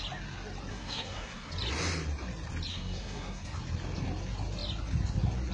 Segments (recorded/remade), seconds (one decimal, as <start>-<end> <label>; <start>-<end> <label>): 0.0-0.7 recorded; 0.7-1.5 remade; 1.5-2.7 recorded; 2.7-3.6 remade; 3.6-5.5 recorded